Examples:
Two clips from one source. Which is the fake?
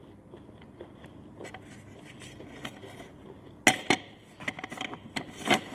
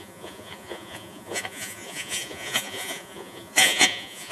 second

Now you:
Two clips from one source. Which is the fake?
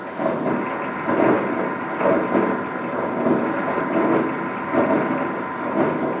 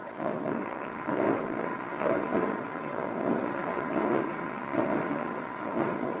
second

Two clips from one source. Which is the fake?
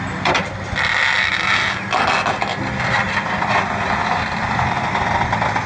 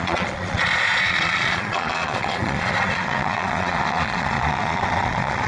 second